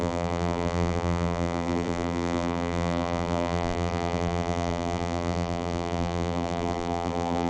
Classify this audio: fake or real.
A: fake